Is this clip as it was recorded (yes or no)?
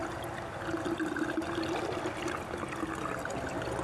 yes